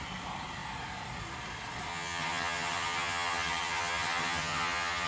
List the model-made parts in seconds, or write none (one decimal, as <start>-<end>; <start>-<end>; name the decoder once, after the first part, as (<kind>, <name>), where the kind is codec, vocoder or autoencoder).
1.9-5.1 (vocoder, HiFi-GAN)